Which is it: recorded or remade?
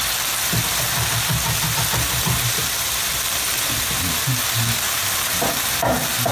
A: recorded